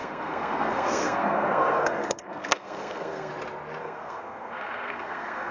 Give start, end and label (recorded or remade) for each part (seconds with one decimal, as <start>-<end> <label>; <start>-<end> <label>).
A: 0.0-3.3 remade; 3.3-3.8 recorded; 3.8-5.5 remade